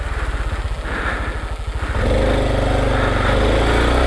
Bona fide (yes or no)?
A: yes